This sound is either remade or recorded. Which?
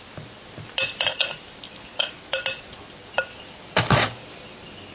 recorded